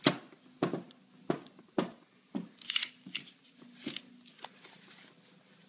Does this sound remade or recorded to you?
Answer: recorded